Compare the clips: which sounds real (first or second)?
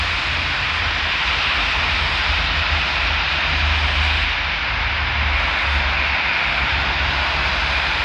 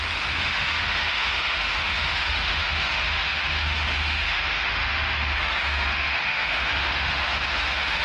first